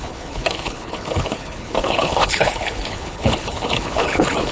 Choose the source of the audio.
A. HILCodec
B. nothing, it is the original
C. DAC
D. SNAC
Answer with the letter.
A